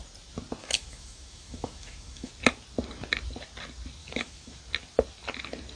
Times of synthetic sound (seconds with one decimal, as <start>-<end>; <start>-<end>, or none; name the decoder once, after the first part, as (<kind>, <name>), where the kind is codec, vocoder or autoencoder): 0.6-2.3 (autoencoder, DAC-VAE); 4.0-4.6